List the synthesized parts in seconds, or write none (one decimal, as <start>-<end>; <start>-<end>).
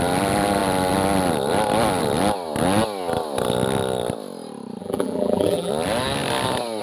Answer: 4.8-5.7